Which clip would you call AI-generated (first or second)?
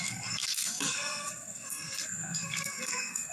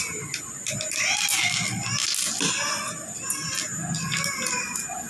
first